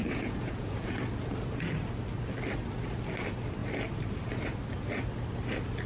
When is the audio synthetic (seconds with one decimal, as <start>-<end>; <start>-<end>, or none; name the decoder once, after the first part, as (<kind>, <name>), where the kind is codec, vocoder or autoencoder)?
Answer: 0.0-1.0 (vocoder, Vocos)

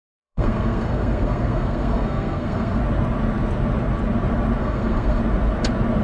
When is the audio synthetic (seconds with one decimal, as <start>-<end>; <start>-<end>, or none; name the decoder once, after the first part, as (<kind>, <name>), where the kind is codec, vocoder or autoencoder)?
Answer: 0.0-2.8 (codec, SNAC); 4.6-5.2

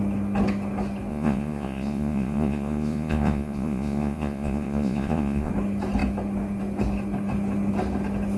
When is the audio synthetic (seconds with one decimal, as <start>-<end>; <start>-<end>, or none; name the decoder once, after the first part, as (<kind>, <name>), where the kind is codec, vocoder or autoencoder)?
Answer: 1.1-5.5 (vocoder, Vocos)

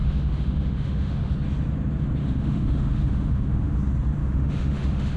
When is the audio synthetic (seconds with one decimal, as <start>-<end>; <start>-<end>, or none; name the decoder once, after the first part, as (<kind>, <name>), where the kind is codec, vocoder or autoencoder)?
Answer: 0.0-1.3 (autoencoder, DAC-VAE); 2.2-3.8; 4.2-5.2